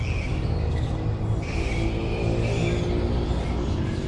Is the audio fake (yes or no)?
no